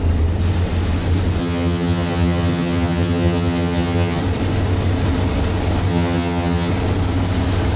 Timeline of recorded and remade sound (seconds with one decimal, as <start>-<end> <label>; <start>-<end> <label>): 0.0-1.4 recorded; 1.4-4.2 remade; 4.2-5.9 recorded; 5.9-6.7 remade; 6.7-7.8 recorded